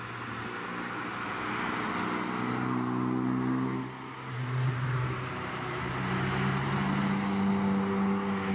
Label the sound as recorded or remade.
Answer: recorded